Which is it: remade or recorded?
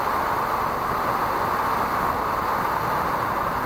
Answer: recorded